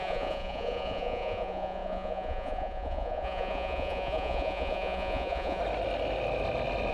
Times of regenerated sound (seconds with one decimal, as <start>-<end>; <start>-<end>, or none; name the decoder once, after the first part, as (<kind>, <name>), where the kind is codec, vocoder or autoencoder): 0.0-5.6 (vocoder, Vocos)